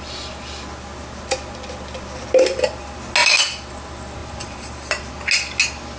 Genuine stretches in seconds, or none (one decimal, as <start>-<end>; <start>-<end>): 0.0-4.2; 5.1-6.0